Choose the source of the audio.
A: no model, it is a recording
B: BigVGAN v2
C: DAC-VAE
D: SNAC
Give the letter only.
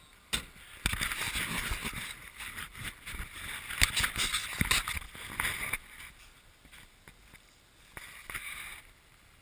A